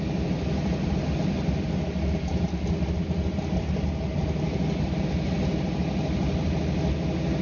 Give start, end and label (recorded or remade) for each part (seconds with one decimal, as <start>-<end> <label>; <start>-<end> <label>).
0.0-7.4 recorded